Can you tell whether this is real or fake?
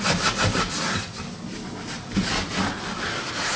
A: real